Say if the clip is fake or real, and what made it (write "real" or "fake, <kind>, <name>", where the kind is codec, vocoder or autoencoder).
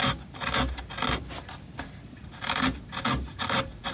real